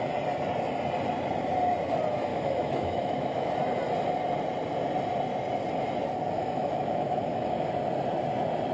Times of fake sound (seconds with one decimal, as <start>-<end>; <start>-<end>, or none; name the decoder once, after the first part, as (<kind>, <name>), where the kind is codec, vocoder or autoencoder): 2.3-3.5 (autoencoder, DAC-VAE); 6.4-7.7